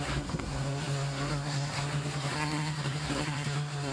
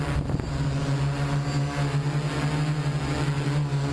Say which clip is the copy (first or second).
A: first